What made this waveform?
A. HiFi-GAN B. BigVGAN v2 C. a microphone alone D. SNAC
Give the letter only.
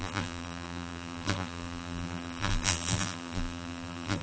B